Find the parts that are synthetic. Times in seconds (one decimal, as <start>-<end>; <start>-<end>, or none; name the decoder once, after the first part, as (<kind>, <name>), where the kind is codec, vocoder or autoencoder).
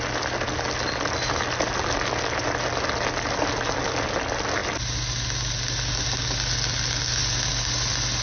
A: none